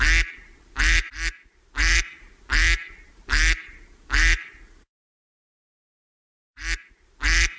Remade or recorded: recorded